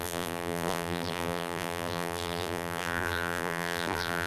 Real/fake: fake